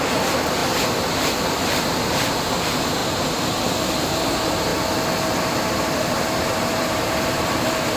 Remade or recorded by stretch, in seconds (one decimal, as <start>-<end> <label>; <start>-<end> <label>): 0.0-0.6 remade; 0.6-1.1 recorded; 1.1-3.0 remade; 3.0-3.8 recorded; 3.8-4.7 remade; 4.7-5.4 recorded; 5.4-8.0 remade